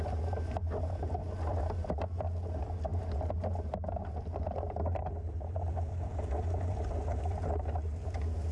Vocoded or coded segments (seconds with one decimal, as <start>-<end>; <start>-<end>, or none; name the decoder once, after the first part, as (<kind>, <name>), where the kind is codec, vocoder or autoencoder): none